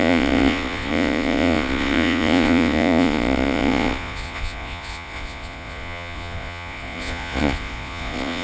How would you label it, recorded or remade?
remade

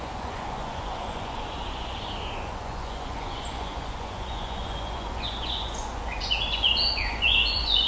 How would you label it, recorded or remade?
remade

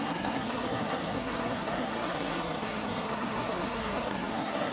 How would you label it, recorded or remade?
remade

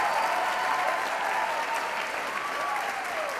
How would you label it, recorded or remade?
recorded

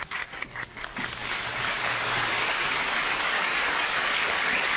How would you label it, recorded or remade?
remade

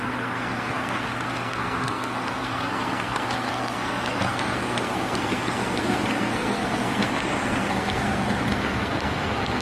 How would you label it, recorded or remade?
remade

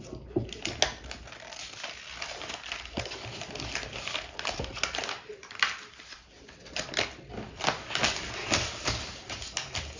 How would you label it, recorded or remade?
recorded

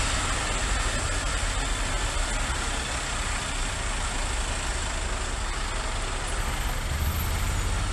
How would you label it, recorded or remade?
recorded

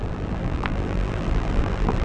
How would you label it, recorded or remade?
remade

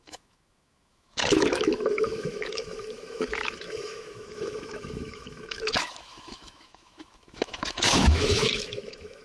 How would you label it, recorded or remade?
remade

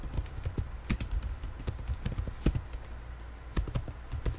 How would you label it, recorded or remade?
recorded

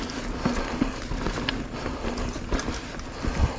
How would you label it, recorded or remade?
recorded